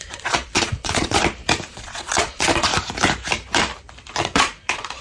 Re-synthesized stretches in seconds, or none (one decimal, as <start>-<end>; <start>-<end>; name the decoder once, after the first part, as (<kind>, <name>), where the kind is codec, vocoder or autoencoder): 0.0-1.2 (vocoder, Vocos); 1.7-2.7; 4.2-5.0